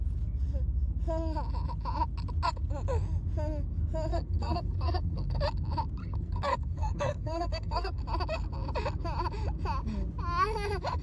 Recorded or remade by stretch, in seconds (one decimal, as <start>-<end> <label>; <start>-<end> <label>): 0.0-4.1 recorded; 4.1-5.4 remade; 5.4-6.0 recorded; 6.0-8.0 remade; 8.0-11.0 recorded